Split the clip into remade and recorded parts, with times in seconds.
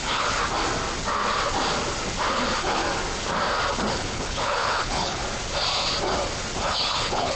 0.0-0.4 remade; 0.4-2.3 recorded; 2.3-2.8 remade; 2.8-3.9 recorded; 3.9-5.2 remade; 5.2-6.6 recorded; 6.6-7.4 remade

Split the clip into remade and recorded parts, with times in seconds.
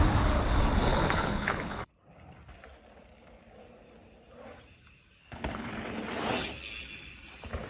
0.0-0.9 recorded; 0.9-1.9 remade; 1.9-5.2 recorded; 5.2-5.7 remade; 5.7-7.7 recorded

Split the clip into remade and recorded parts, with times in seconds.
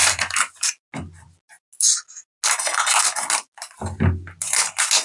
0.0-5.0 recorded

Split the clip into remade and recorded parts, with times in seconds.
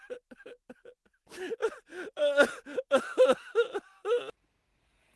0.0-5.2 recorded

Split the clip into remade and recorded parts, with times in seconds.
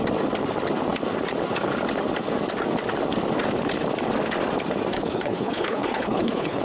0.0-4.9 recorded; 4.9-6.6 remade